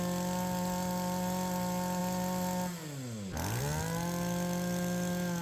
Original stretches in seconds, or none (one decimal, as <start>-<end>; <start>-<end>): 0.0-5.4